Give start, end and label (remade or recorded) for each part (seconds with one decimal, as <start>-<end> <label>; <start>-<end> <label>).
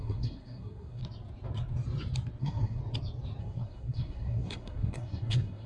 0.0-1.0 remade; 1.0-2.4 recorded; 2.4-2.8 remade; 2.8-3.4 recorded; 3.4-5.7 remade